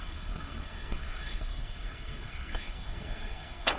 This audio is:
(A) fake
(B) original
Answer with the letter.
A